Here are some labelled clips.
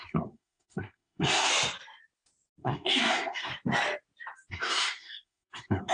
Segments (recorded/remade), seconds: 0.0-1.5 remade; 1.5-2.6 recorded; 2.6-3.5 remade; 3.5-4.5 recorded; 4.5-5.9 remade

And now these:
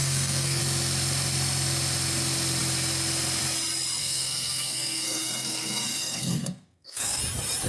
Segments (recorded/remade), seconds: 0.0-0.6 remade; 0.6-4.0 recorded; 4.0-7.2 remade; 7.2-7.7 recorded

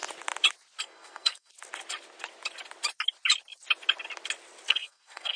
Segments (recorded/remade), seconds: 0.0-0.8 recorded; 0.8-1.5 remade; 1.5-4.7 recorded; 4.7-5.4 remade

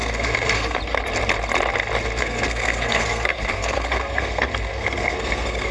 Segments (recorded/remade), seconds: 0.0-0.8 remade; 0.8-2.2 recorded; 2.2-5.7 remade

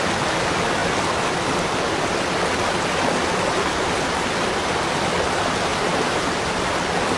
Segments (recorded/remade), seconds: 0.0-7.2 recorded